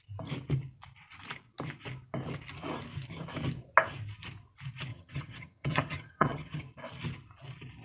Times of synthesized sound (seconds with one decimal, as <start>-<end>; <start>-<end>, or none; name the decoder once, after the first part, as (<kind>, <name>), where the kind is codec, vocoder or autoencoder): 4.9-6.6 (vocoder, HiFi-GAN)